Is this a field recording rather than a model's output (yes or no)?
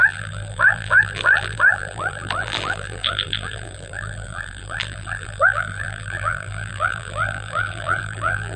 no